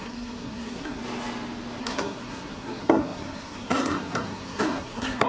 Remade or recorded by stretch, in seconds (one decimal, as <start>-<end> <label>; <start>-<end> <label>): 0.0-1.0 remade; 1.0-1.8 recorded; 1.8-5.3 remade